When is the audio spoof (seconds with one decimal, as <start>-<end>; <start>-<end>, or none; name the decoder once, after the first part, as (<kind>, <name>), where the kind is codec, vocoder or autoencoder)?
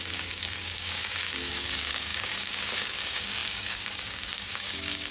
0.0-5.1 (codec, DAC)